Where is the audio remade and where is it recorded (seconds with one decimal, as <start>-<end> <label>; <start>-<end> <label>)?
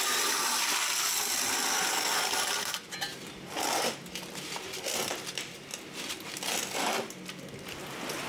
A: 0.0-8.3 recorded